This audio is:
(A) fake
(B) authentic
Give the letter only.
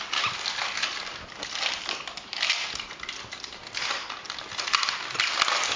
B